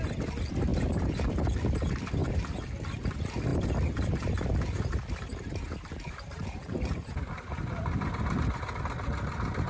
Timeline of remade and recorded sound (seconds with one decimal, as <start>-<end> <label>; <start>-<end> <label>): 0.0-0.7 recorded; 0.7-1.3 remade; 1.3-2.2 recorded; 2.2-2.7 remade; 2.7-3.5 recorded; 3.5-8.8 remade; 8.8-9.7 recorded